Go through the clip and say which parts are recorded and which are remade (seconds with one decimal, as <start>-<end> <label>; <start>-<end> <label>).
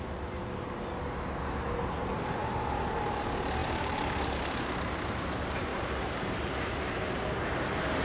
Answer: 0.0-3.6 recorded; 3.6-4.9 remade; 4.9-5.7 recorded; 5.7-7.3 remade; 7.3-8.0 recorded